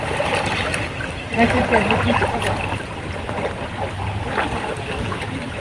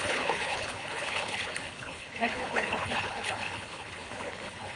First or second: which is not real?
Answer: second